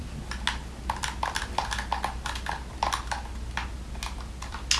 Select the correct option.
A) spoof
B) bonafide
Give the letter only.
B